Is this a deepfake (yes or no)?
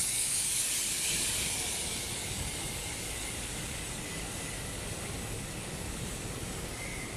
yes